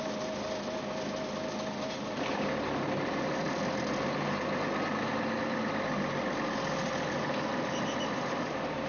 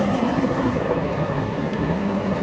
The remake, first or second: second